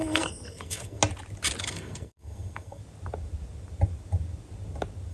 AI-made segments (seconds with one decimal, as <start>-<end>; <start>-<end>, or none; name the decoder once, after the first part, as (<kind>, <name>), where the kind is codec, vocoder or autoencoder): 0.0-1.0 (codec, SNAC); 1.6-2.8